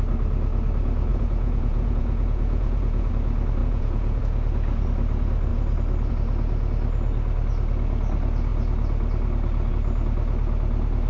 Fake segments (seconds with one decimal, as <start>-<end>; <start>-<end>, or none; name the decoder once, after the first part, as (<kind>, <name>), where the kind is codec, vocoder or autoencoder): 1.1-3.1 (vocoder, Vocos); 3.6-4.2